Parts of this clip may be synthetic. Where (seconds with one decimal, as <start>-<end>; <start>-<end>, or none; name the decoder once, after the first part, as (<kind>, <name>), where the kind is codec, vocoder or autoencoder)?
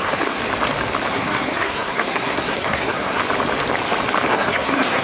0.0-0.4 (codec, SNAC); 1.1-3.2; 4.3-5.0